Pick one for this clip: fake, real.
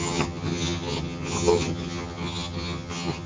fake